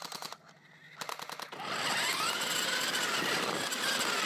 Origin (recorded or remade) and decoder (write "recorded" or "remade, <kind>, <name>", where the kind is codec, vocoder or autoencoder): recorded